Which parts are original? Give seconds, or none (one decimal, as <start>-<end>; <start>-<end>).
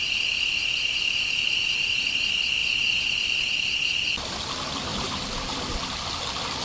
0.0-6.6